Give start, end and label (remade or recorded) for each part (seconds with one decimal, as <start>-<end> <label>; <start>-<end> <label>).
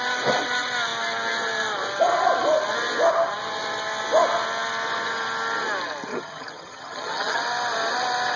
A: 0.0-6.1 recorded; 6.1-7.4 remade; 7.4-8.4 recorded